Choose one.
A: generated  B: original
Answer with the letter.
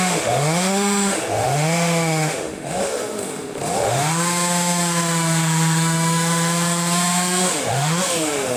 A